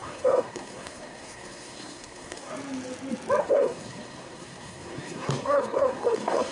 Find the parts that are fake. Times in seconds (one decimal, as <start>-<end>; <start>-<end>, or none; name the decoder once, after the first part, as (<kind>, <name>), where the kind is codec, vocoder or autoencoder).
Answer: 0.0-2.5 (codec, SNAC); 3.4-6.5